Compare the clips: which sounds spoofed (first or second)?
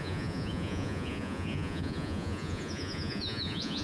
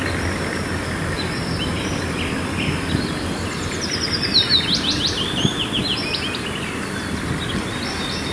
first